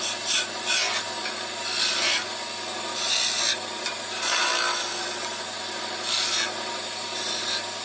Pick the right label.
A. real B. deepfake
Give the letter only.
A